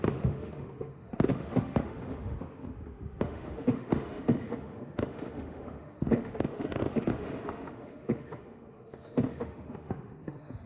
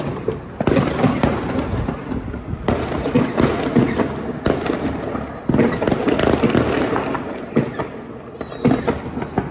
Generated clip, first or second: first